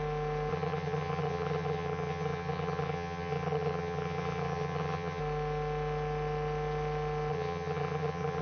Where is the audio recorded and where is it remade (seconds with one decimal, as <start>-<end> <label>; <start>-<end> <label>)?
0.0-0.5 recorded; 0.5-5.2 remade; 5.2-7.3 recorded; 7.3-8.4 remade